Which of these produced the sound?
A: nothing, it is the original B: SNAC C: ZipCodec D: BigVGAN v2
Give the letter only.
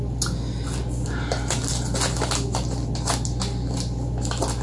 A